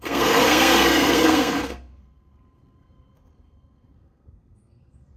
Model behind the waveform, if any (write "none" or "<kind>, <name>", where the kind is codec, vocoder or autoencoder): codec, SNAC